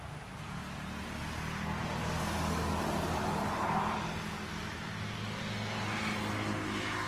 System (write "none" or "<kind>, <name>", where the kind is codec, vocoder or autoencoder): none